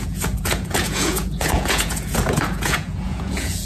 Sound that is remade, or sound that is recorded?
remade